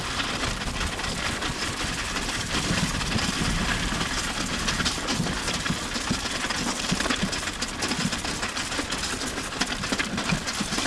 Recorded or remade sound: recorded